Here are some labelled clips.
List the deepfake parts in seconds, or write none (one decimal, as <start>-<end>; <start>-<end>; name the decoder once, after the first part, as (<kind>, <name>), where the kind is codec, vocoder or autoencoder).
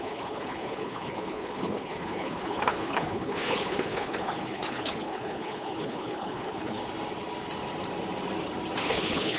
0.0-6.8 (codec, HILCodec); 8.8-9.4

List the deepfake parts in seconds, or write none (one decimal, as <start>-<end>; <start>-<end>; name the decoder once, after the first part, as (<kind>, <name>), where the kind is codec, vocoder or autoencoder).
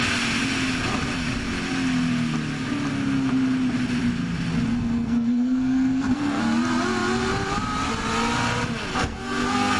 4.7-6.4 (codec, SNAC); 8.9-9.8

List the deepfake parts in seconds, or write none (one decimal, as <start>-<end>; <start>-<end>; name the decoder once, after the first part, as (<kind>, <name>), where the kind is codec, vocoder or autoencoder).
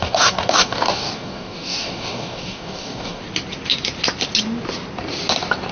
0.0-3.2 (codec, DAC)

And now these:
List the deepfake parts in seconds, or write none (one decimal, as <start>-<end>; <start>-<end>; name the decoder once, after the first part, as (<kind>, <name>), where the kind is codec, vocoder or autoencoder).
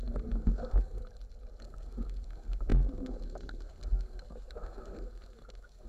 0.0-1.0 (codec, SNAC); 1.6-5.9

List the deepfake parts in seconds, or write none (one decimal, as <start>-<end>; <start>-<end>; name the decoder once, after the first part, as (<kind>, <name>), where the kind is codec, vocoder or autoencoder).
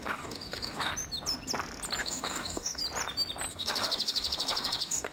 0.0-0.9 (codec, DAC); 2.0-2.8; 3.5-5.1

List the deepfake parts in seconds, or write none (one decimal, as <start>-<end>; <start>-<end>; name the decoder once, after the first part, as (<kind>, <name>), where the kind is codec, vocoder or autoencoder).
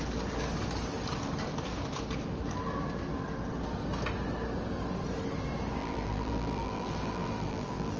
5.8-8.0 (vocoder, BigVGAN v2)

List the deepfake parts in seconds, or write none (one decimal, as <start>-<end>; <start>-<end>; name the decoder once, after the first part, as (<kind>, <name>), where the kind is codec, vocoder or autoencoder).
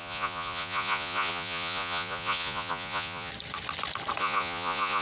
0.0-3.3 (vocoder, Vocos); 4.2-5.0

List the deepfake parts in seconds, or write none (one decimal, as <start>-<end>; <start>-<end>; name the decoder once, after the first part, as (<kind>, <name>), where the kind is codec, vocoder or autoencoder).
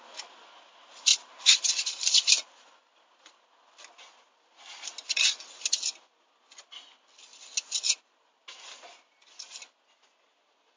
1.1-2.3 (vocoder, BigVGAN v2)